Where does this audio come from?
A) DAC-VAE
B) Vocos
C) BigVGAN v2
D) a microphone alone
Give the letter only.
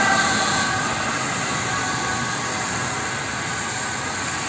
D